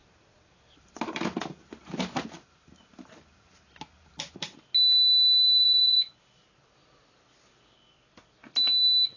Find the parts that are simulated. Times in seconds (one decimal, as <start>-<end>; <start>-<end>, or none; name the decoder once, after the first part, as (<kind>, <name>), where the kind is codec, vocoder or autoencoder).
5.4-6.1 (vocoder, BigVGAN v2)